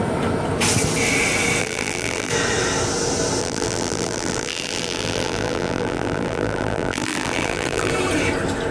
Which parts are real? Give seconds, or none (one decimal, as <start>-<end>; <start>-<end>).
0.0-1.6; 2.3-3.4; 7.9-8.7